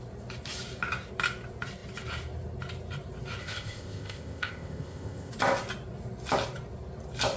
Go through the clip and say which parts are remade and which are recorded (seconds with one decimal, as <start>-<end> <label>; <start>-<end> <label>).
0.0-3.4 recorded; 3.4-5.3 remade; 5.3-7.4 recorded